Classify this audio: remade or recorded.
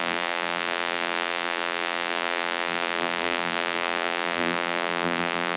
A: remade